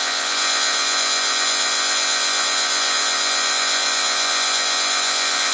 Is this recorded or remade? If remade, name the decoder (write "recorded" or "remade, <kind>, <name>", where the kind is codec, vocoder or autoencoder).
remade, vocoder, Vocos